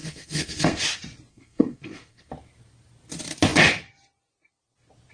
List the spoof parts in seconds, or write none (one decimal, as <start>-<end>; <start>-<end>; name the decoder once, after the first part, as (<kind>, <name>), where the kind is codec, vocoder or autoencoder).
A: 0.0-0.8 (codec, SNAC); 1.3-2.3